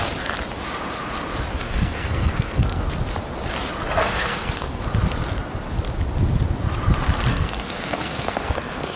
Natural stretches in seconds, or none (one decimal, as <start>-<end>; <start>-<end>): 0.0-1.6; 2.8-4.0; 4.8-7.3